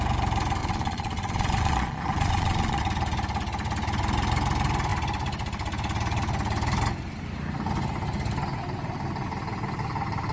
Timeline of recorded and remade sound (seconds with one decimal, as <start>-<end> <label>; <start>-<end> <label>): 0.0-0.6 recorded; 0.6-2.8 remade; 2.8-10.3 recorded